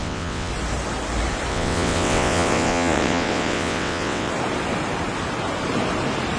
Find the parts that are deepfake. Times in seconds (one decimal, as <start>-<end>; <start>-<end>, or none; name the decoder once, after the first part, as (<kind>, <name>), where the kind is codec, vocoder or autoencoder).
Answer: 0.0-0.5 (vocoder, WaveNeXt); 1.5-4.3